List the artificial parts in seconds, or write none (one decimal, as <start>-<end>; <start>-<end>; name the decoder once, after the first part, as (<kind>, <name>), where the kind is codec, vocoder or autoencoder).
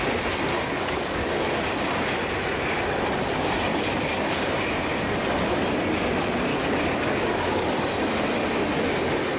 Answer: 0.5-1.6 (codec, DAC); 3.7-4.6; 6.5-7.9